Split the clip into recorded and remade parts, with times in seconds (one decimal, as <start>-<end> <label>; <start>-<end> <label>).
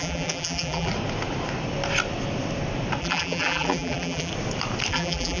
0.0-0.9 remade; 0.9-3.0 recorded; 3.0-4.3 remade; 4.3-4.9 recorded; 4.9-5.4 remade